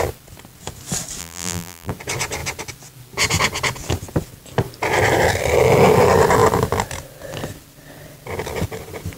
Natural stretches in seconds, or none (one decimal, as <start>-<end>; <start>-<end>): 0.0-1.2; 1.9-9.2